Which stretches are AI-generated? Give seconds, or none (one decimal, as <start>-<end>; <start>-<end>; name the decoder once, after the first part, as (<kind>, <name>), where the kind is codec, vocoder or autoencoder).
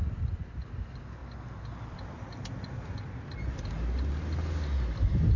none